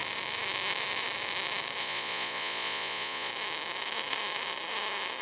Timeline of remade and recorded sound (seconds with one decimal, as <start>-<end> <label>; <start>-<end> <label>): 0.0-1.8 recorded; 1.8-3.3 remade; 3.3-5.2 recorded